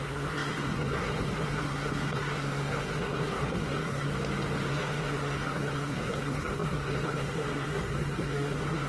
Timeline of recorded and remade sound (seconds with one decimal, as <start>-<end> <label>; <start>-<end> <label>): 0.0-4.1 remade; 4.1-4.7 recorded; 4.7-8.9 remade